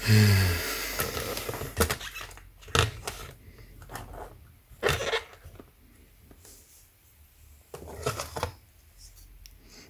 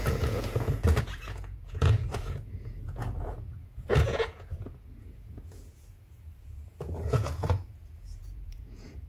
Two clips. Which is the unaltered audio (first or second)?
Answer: first